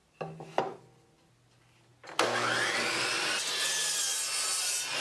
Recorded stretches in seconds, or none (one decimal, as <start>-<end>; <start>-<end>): 0.0-5.0